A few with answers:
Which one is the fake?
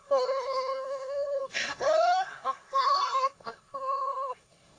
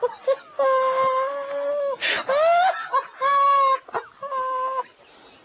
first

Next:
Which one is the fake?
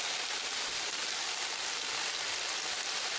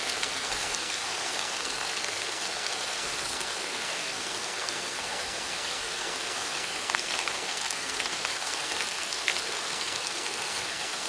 second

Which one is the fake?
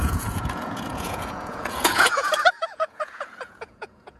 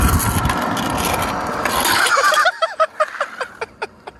first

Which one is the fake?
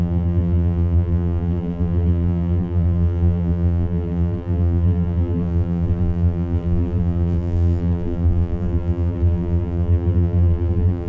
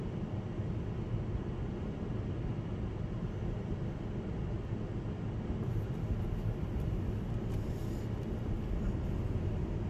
first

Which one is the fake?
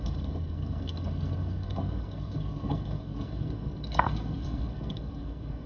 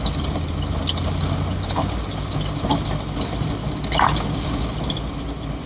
first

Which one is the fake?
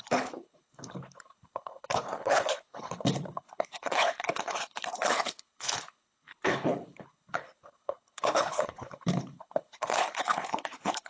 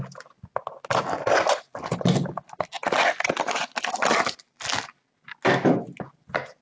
first